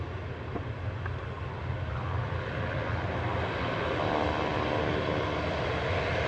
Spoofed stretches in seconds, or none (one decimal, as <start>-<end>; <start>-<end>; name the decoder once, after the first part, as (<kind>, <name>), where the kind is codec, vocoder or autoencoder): none

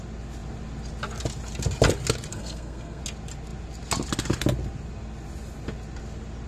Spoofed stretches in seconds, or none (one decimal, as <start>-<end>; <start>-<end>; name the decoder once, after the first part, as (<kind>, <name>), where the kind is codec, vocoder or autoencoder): 2.3-3.0 (codec, SNAC)

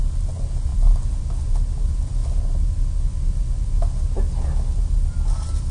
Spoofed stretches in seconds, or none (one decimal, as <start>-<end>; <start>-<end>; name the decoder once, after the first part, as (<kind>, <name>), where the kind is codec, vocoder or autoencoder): none

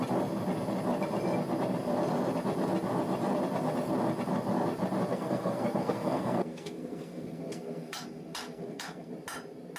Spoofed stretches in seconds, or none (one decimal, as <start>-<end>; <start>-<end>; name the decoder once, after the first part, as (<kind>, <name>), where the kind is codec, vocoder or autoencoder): 5.1-9.1 (codec, SNAC)

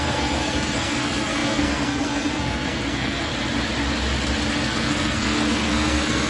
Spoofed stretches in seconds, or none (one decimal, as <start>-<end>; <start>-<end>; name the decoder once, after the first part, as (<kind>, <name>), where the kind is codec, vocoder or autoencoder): 0.0-3.3 (codec, SNAC); 4.5-6.3

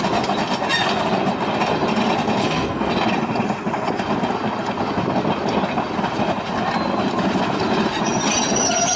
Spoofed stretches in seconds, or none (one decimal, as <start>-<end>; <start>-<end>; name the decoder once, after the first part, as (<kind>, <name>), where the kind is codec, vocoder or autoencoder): 2.4-2.9 (codec, SNAC)

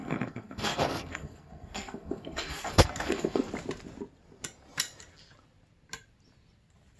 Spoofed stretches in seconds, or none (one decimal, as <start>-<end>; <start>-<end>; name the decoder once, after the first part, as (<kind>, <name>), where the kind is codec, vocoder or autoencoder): 0.0-3.5 (codec, SNAC)

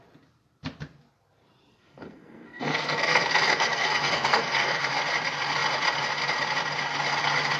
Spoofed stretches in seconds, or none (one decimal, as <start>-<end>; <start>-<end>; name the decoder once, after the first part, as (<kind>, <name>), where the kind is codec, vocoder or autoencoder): 1.7-4.9 (codec, SNAC)